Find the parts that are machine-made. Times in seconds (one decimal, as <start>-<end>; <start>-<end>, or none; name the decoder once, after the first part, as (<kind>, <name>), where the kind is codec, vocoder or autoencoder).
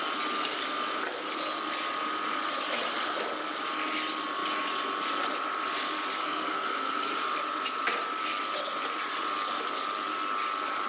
6.2-7.1 (codec, SNAC)